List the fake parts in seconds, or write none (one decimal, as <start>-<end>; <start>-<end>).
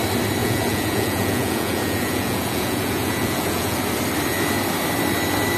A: 0.4-3.8